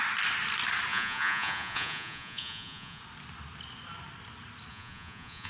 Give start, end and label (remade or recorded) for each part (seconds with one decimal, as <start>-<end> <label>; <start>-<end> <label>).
0.0-0.9 recorded; 0.9-3.0 remade; 3.0-4.7 recorded; 4.7-5.5 remade